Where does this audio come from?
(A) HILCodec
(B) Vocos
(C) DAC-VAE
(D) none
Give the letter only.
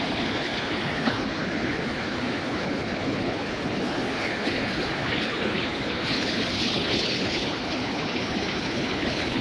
A